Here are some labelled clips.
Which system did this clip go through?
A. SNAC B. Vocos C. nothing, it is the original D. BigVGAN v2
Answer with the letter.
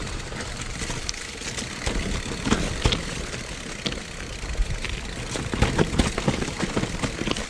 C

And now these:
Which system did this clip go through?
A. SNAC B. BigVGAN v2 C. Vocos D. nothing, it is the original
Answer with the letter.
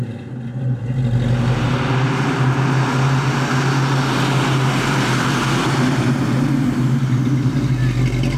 D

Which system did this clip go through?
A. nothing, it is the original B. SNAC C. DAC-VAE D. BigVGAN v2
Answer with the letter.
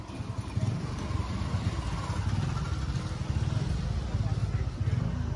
A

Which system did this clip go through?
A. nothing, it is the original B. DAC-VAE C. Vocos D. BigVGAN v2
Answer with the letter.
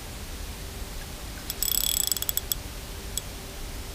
A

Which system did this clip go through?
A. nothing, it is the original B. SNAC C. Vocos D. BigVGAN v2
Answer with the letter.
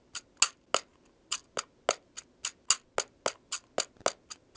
A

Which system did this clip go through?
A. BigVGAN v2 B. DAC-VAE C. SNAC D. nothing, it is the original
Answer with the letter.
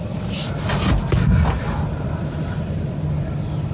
D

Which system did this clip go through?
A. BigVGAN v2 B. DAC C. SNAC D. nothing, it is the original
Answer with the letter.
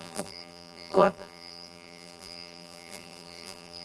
A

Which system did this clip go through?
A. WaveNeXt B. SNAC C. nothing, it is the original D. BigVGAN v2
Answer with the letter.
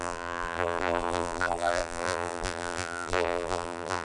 D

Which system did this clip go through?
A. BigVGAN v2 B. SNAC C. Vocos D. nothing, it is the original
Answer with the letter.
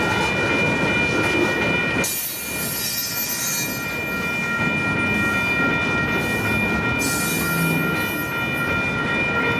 D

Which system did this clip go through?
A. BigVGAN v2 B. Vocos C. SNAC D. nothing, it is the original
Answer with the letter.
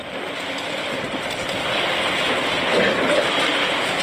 D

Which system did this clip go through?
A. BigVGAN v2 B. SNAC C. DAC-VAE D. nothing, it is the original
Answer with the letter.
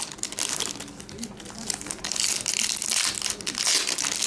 D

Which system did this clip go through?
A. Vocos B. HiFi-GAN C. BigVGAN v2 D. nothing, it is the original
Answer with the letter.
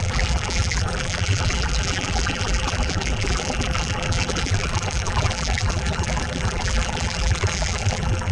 C